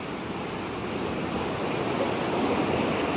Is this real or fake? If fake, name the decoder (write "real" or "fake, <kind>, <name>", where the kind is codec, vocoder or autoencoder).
real